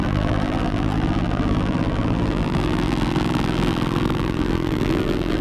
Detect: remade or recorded remade